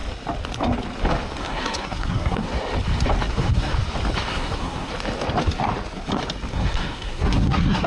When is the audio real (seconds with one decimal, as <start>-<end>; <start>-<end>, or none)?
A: 0.0-1.4; 2.5-3.3; 3.7-4.3; 4.9-6.5